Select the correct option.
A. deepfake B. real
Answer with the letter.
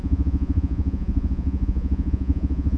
A